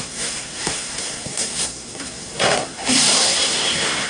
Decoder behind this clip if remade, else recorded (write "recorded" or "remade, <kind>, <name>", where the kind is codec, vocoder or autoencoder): remade, codec, SNAC